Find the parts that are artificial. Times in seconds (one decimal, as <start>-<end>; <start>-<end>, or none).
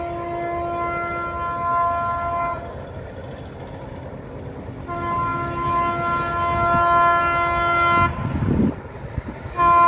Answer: none